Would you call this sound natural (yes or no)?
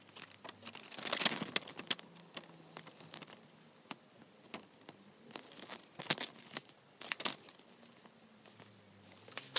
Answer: yes